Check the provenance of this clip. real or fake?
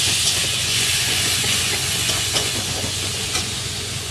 fake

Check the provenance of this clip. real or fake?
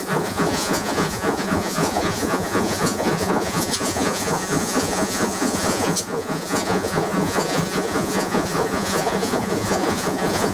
fake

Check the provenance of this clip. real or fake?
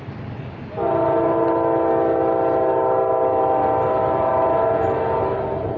real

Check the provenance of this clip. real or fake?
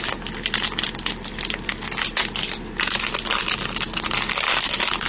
real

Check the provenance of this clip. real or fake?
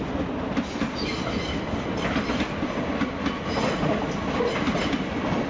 real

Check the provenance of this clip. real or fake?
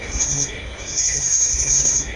fake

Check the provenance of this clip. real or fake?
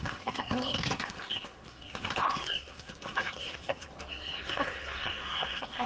fake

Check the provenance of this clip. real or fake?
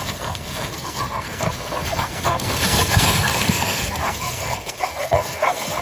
fake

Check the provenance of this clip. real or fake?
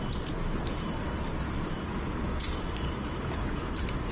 fake